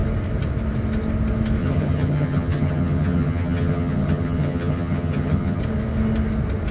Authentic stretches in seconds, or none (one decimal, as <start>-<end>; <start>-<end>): 0.0-1.6; 5.6-6.7